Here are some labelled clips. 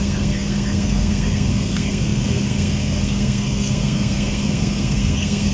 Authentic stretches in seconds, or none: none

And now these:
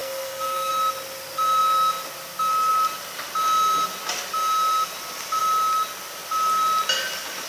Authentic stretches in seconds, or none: 0.7-7.5

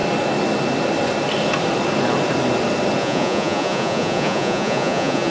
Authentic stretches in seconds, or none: 0.0-3.0

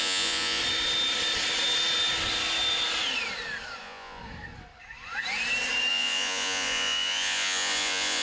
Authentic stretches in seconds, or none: 0.6-3.8; 4.2-5.9

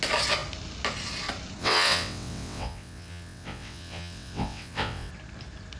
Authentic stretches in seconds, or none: 0.0-1.6; 5.1-5.8

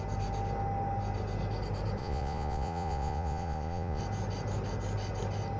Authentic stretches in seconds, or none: 0.0-2.0; 4.0-5.6

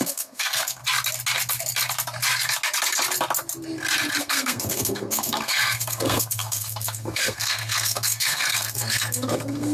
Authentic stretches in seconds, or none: 0.8-4.2

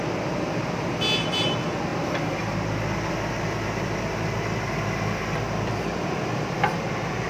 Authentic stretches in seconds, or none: 0.0-7.3